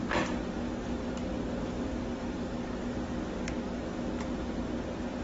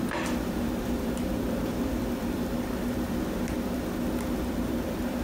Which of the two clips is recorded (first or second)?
first